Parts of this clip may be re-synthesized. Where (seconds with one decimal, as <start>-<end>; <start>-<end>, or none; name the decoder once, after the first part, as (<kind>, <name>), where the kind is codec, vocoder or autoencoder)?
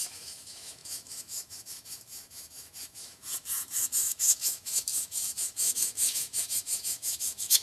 0.0-7.6 (autoencoder, DAC-VAE)